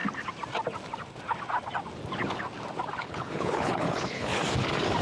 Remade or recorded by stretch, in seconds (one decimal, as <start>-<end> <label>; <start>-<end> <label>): 0.0-3.0 recorded; 3.0-4.3 remade; 4.3-5.0 recorded